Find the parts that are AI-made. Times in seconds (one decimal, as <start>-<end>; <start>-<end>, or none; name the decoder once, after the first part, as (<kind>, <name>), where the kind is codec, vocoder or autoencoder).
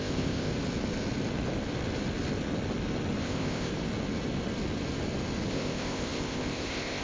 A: 0.0-0.5 (codec, ZipCodec); 3.2-3.7; 5.5-7.0